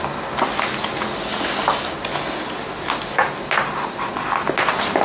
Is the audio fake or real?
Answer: real